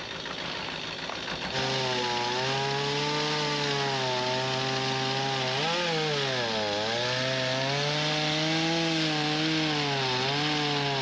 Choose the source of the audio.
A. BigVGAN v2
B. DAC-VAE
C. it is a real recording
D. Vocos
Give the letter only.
C